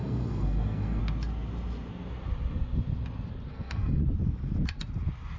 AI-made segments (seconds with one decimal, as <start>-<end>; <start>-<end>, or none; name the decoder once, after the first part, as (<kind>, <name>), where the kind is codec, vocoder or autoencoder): 0.0-1.0 (codec, SNAC); 3.5-4.0